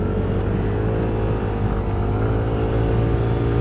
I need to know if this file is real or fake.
real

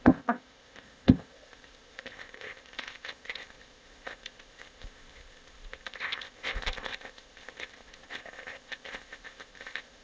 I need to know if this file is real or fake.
fake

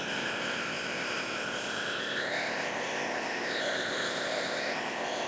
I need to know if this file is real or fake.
fake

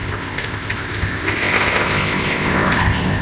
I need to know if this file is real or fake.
fake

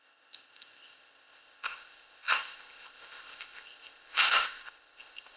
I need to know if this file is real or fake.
fake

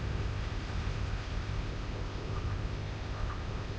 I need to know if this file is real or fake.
fake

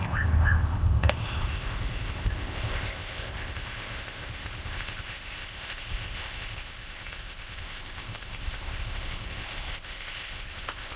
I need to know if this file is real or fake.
fake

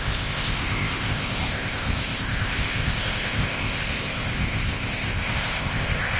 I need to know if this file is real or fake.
fake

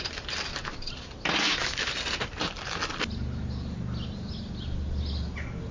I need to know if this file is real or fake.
real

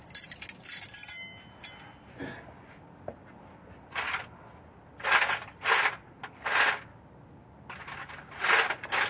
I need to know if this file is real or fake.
real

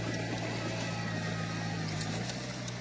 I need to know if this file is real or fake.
real